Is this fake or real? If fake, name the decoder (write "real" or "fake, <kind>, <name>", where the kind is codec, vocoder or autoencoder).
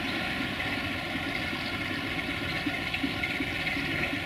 real